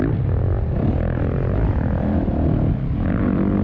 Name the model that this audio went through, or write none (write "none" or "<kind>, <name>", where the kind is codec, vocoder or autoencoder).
none